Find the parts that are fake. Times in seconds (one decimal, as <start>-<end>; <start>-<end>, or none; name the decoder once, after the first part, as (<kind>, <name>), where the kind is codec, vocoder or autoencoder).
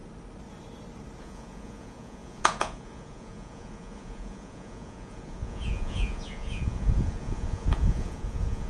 1.2-8.7 (vocoder, Vocos)